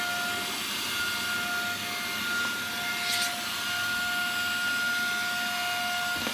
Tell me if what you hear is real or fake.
real